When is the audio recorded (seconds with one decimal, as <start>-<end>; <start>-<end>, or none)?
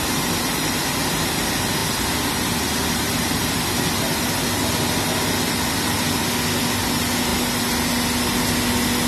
0.0-9.1